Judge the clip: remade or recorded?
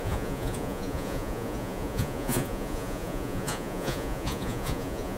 remade